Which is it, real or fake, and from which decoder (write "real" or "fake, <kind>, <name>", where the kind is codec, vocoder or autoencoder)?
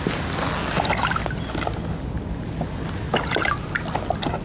real